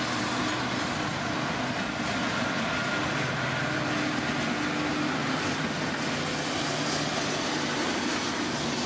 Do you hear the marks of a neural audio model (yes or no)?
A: no